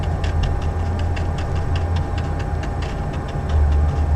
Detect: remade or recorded recorded